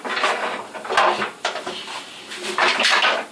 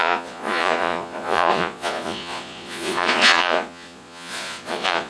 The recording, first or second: first